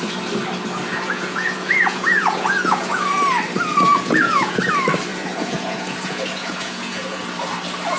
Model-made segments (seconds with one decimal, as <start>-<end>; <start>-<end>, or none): 0.9-3.1; 3.9-4.6; 5.1-7.2